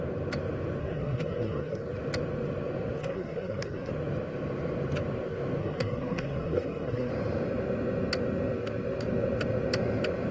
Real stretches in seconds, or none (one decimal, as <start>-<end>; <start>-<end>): 0.0-0.8; 1.8-3.0; 3.9-5.6; 7.1-10.3